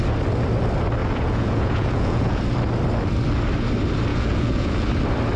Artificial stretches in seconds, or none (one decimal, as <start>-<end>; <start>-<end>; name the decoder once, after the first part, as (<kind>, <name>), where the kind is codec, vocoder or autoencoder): 1.0-2.4 (vocoder, Vocos); 4.1-4.9